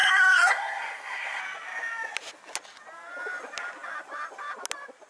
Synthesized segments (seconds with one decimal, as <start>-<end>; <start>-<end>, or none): 0.0-1.4